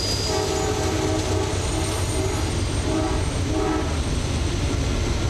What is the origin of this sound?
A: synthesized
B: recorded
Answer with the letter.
B